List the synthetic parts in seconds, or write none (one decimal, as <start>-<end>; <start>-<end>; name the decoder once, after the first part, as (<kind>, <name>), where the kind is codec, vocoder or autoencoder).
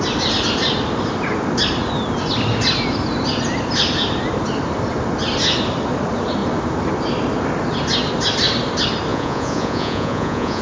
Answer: 9.1-10.6 (vocoder, Vocos)